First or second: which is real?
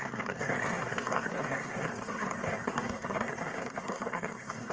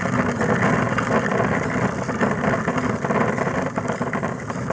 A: second